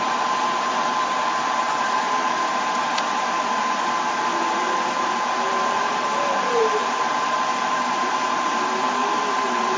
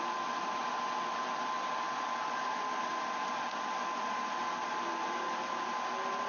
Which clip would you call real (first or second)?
second